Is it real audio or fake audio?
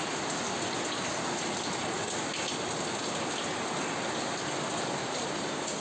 real